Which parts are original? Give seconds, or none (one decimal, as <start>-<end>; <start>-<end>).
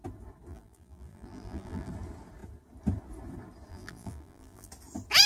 0.0-0.5; 1.9-3.7; 4.7-5.3